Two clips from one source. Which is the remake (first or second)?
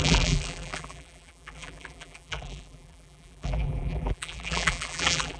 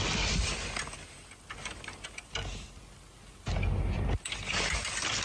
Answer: first